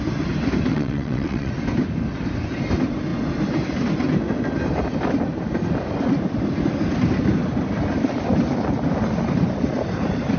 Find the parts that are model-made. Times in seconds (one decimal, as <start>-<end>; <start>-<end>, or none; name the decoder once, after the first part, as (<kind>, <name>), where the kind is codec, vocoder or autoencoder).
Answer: 0.7-1.5 (vocoder, WaveNeXt)